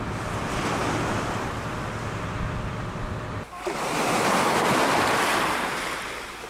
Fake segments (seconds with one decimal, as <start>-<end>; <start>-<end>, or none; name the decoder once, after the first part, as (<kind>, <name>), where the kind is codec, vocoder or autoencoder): none